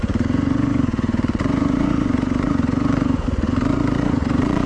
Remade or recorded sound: remade